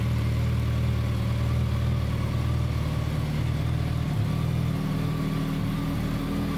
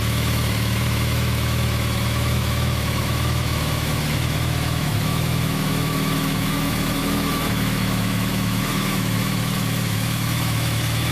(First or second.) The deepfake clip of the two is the second